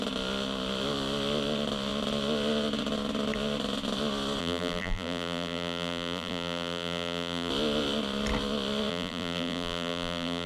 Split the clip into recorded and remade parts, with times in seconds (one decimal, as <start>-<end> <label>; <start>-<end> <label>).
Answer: 0.0-4.4 recorded; 4.4-7.5 remade; 7.5-8.9 recorded; 8.9-10.5 remade